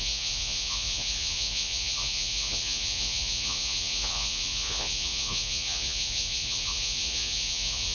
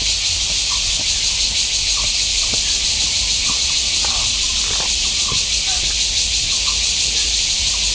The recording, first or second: second